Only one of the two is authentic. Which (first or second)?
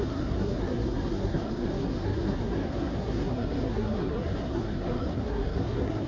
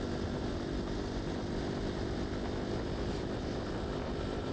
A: second